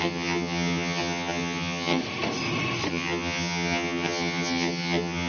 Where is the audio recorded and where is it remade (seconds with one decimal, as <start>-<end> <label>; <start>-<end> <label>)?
0.0-2.0 remade; 2.0-2.9 recorded; 2.9-5.3 remade